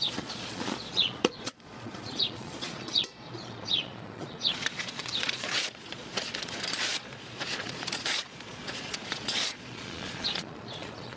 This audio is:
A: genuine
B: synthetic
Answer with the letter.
B